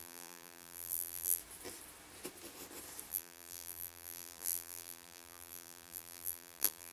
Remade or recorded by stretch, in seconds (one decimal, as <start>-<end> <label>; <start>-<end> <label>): 0.0-1.4 remade; 1.4-3.1 recorded; 3.1-6.9 remade

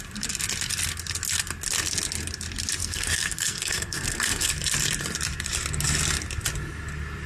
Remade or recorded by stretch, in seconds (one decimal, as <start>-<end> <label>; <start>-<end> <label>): 0.0-2.8 recorded; 2.8-4.5 remade; 4.5-7.3 recorded

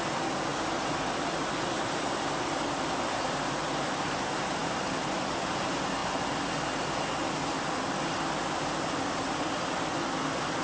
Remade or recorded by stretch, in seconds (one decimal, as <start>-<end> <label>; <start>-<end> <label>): 0.0-0.5 recorded; 0.5-4.1 remade; 4.1-4.6 recorded; 4.6-5.2 remade; 5.2-10.6 recorded

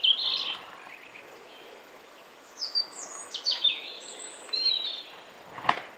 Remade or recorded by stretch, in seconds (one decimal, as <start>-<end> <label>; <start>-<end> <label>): 0.0-1.1 recorded; 1.1-4.7 remade; 4.7-6.0 recorded

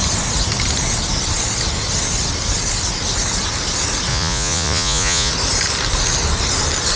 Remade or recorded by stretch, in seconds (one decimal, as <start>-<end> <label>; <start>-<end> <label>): 0.0-4.1 recorded; 4.1-5.3 remade; 5.3-7.0 recorded

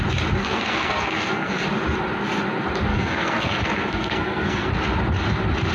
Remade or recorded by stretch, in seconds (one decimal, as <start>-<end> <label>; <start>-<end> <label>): 0.0-0.4 recorded; 0.4-1.6 remade; 1.6-2.9 recorded; 2.9-4.7 remade; 4.7-5.7 recorded

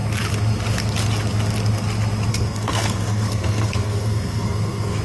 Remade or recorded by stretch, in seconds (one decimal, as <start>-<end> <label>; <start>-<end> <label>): 0.0-2.3 recorded; 2.3-5.0 remade

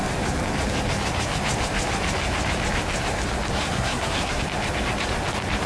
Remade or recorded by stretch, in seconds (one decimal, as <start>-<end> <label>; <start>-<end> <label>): 0.0-3.6 recorded; 3.6-4.4 remade; 4.4-5.7 recorded